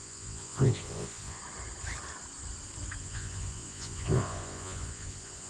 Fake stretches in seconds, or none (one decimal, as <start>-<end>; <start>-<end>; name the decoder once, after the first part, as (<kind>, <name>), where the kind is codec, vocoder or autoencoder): 0.0-1.4 (vocoder, Vocos); 3.0-5.5